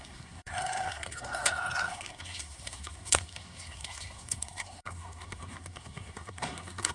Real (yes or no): no